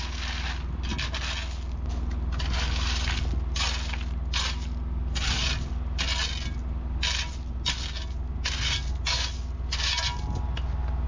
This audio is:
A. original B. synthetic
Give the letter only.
A